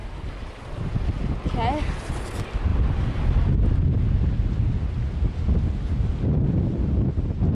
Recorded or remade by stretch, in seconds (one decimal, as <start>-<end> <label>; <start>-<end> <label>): 0.0-7.5 recorded